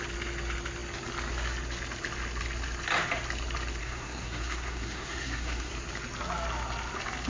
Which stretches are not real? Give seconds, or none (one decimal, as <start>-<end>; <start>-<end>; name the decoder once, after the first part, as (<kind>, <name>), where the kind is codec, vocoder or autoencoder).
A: 3.8-5.7 (codec, SNAC)